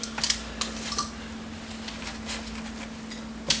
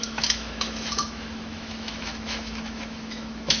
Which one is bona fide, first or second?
first